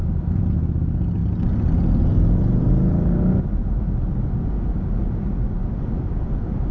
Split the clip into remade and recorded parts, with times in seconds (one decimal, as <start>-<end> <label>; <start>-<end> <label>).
0.0-6.7 recorded